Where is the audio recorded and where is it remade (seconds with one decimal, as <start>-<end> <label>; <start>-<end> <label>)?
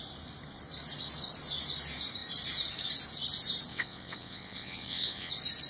0.0-3.7 recorded; 3.7-5.3 remade; 5.3-5.7 recorded